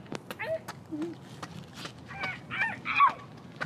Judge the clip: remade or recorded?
recorded